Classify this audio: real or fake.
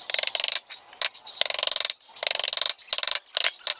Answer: real